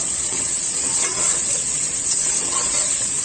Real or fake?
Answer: fake